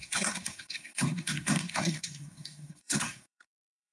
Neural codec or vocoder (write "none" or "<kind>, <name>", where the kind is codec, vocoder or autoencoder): codec, SNAC